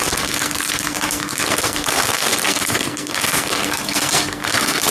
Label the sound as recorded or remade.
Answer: remade